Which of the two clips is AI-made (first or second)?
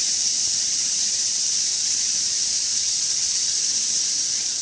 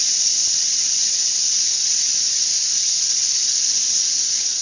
first